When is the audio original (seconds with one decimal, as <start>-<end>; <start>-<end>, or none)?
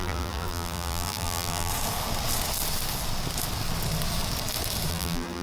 1.7-4.9